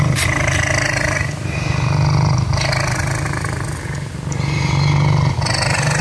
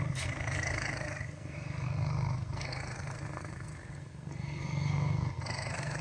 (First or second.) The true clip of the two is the first